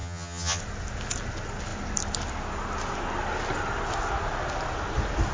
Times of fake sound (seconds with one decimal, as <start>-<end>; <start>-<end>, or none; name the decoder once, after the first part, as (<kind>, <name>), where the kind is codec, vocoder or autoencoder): 0.0-0.6 (vocoder, HiFi-GAN)